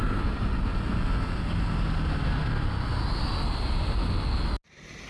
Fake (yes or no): no